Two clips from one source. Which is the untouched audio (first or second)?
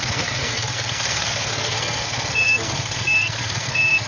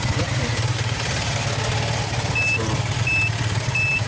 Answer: second